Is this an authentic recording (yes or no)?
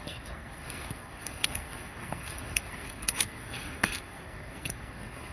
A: no